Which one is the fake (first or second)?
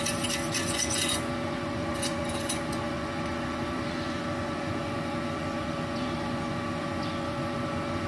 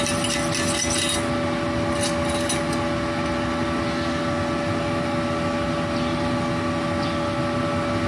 first